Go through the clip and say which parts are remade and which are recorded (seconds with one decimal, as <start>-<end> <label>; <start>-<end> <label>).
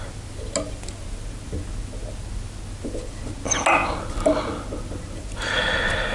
0.0-6.1 recorded